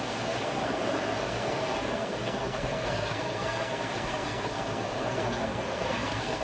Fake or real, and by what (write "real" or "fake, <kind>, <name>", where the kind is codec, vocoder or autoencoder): fake, codec, SNAC